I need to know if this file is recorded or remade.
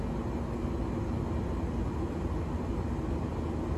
recorded